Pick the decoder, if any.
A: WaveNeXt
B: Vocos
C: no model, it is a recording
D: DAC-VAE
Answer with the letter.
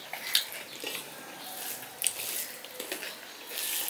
C